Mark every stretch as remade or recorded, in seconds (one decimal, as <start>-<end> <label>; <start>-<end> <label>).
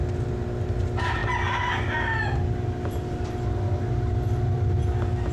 0.0-5.3 recorded